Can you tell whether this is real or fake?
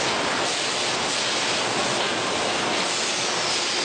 real